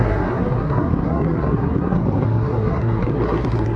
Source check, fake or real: fake